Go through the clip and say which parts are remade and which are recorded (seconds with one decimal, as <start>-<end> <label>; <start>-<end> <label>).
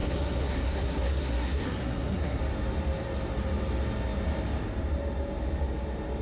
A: 0.0-2.4 remade; 2.4-6.2 recorded